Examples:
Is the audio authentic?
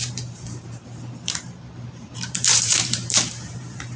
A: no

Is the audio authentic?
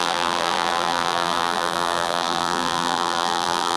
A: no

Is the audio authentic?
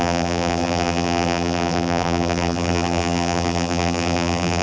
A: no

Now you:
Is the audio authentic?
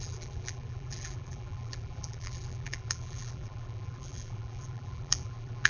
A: no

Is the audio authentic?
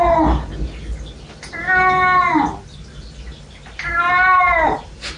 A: yes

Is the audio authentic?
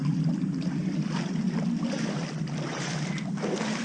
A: no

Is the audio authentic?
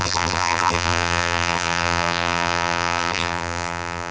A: no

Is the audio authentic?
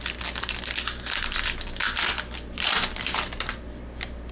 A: no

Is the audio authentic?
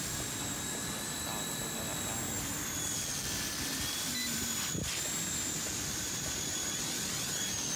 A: no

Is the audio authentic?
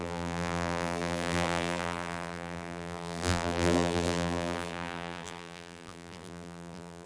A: no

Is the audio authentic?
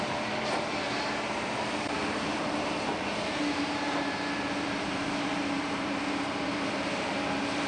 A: no